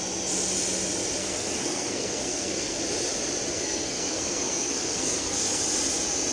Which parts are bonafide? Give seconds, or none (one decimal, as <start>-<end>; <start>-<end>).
0.0-1.2; 2.8-3.5; 5.6-6.3